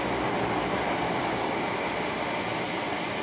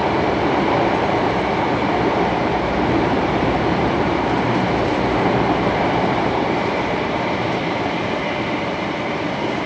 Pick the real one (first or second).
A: first